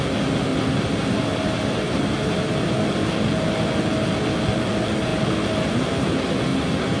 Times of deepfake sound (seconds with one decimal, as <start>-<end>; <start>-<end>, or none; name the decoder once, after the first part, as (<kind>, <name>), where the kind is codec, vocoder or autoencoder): 0.5-2.5 (vocoder, BigVGAN v2); 6.5-7.0